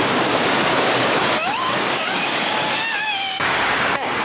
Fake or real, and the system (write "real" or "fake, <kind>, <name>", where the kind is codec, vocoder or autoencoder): fake, codec, DAC